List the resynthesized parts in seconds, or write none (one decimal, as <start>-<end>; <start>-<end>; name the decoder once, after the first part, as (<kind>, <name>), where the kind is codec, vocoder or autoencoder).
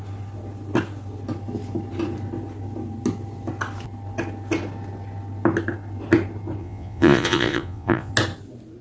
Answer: 6.6-8.1 (vocoder, Vocos)